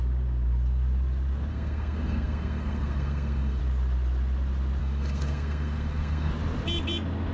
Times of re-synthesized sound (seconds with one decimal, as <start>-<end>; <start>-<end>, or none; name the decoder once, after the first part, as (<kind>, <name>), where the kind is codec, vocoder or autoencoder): 1.5-3.6 (codec, SNAC); 4.8-6.3